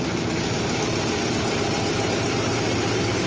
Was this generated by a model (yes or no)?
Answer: no